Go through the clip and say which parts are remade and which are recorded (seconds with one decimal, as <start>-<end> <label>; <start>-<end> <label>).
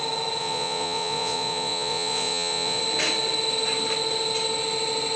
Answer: 0.0-0.4 recorded; 0.4-2.8 remade; 2.8-5.2 recorded